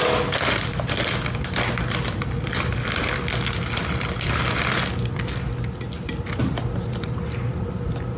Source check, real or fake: real